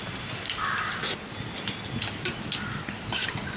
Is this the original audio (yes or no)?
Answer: yes